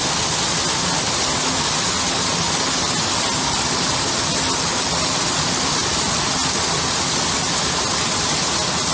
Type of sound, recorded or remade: recorded